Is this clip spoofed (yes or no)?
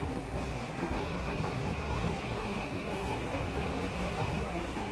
yes